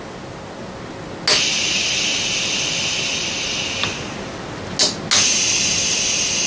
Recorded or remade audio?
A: recorded